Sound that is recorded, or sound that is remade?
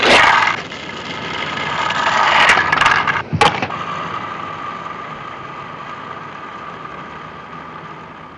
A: recorded